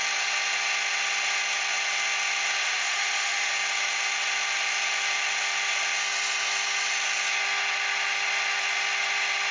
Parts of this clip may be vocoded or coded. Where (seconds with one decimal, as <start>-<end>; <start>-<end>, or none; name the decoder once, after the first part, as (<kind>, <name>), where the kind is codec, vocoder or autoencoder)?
2.6-3.5 (autoencoder, DAC-VAE)